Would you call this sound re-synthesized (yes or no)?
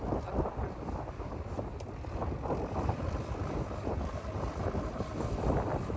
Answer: no